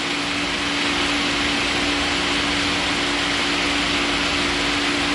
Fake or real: real